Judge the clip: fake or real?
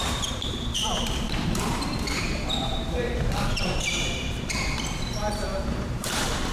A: fake